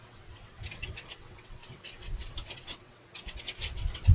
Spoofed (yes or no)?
yes